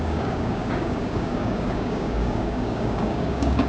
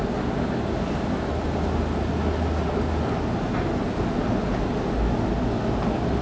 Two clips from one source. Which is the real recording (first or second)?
second